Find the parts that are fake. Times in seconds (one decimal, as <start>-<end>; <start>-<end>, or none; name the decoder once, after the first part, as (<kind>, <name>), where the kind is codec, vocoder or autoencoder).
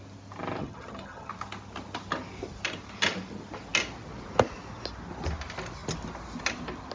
0.6-1.3 (vocoder, HiFi-GAN)